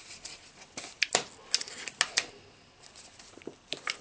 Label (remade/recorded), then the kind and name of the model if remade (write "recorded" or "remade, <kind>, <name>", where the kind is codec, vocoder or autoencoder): recorded